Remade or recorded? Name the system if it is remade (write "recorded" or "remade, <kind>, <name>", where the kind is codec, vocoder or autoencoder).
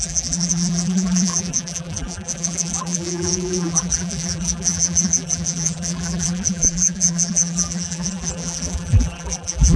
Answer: remade, vocoder, BigVGAN v2